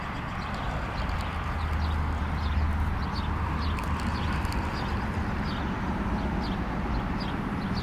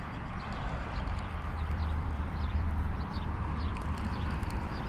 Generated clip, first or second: second